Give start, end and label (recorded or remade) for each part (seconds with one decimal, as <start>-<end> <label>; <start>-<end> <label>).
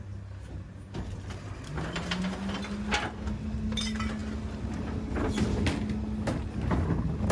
0.0-7.3 recorded